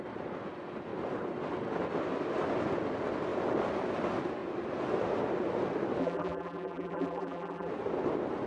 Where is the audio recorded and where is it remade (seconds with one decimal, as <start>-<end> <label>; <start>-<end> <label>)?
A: 0.0-6.0 recorded; 6.0-7.7 remade; 7.7-8.5 recorded